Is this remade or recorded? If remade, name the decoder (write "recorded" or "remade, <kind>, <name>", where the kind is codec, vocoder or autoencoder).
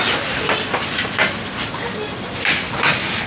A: recorded